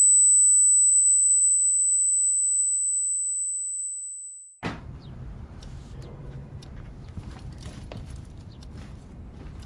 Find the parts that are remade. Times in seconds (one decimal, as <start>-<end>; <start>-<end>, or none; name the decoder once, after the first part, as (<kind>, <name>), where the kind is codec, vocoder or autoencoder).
0.9-9.7 (vocoder, BigVGAN v2)

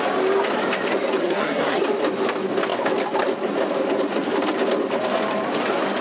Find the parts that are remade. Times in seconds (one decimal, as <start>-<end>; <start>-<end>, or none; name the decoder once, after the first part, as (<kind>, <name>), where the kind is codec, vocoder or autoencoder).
1.2-1.8 (codec, SNAC)

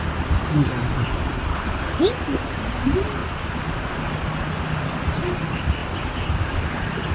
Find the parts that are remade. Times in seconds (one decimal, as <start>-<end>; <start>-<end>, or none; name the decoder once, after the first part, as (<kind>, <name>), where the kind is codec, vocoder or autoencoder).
1.5-2.0 (codec, HILCodec)

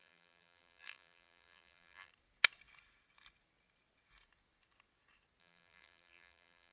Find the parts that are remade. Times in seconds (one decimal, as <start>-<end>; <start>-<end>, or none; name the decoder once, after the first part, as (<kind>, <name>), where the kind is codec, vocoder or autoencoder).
0.0-2.1 (vocoder, BigVGAN v2); 5.4-6.7